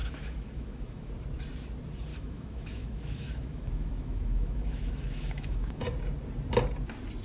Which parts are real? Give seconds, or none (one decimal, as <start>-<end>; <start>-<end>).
1.1-2.1; 5.8-7.2